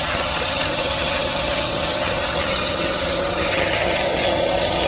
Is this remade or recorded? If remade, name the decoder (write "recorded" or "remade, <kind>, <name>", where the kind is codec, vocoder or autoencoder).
remade, vocoder, HiFi-GAN